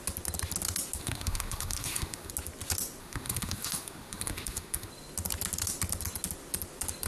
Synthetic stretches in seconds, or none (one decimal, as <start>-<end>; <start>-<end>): 1.0-2.3; 3.0-4.9